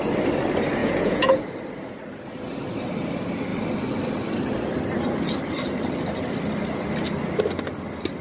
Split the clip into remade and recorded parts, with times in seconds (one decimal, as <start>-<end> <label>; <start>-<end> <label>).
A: 0.0-0.8 recorded; 0.8-1.4 remade; 1.4-8.2 recorded